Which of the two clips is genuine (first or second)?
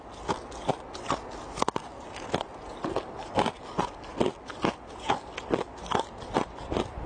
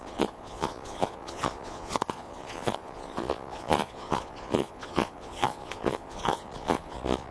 first